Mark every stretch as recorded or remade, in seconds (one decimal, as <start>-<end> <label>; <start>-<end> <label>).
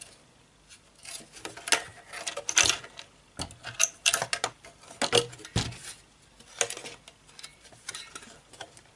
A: 0.0-7.5 recorded; 7.5-9.0 remade